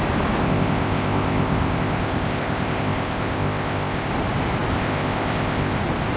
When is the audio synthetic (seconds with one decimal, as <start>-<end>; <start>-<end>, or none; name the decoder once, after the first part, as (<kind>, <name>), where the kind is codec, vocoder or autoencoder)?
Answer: 0.4-4.1 (codec, ZipCodec); 4.7-5.8